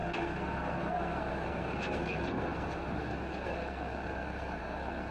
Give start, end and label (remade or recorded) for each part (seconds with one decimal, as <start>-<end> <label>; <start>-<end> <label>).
0.0-5.1 remade